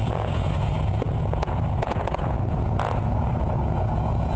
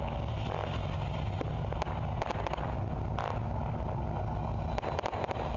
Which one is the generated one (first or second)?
first